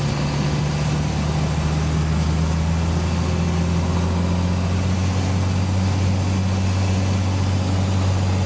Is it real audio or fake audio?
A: real